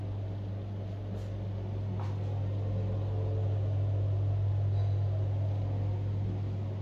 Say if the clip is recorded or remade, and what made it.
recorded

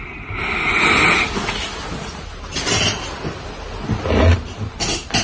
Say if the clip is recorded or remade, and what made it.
recorded